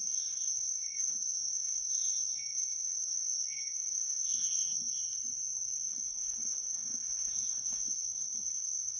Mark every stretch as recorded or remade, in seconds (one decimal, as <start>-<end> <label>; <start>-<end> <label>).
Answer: 0.0-5.0 remade; 5.0-5.9 recorded; 5.9-9.0 remade